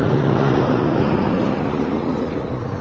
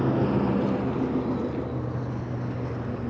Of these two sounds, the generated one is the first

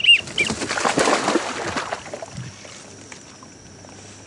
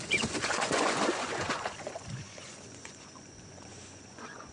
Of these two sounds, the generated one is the second